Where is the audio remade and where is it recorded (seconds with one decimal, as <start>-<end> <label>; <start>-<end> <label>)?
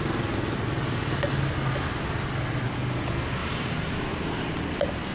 0.0-3.4 recorded; 3.4-4.5 remade; 4.5-5.1 recorded